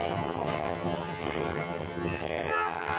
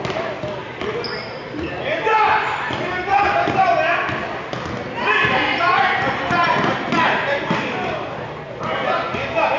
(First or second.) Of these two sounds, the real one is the second